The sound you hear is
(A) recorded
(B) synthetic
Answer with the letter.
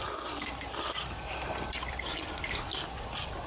A